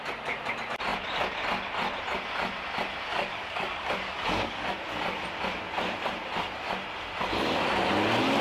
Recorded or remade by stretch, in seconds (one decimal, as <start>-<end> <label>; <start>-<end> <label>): 0.0-3.1 recorded; 3.1-4.7 remade; 4.7-8.4 recorded

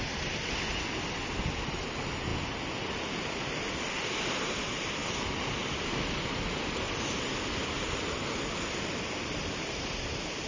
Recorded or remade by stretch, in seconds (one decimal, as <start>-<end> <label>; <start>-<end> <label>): 0.0-10.5 recorded

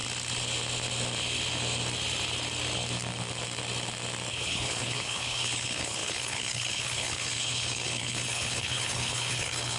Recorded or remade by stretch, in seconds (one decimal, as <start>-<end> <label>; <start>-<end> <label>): 0.0-4.3 recorded; 4.3-9.8 remade

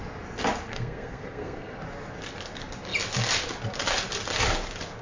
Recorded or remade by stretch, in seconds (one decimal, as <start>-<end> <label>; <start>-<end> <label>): 0.0-0.7 recorded; 0.7-1.7 remade; 1.7-5.0 recorded